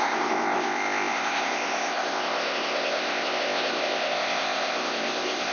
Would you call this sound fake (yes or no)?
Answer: yes